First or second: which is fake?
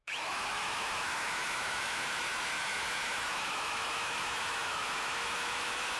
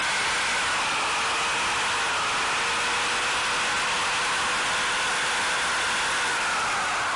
first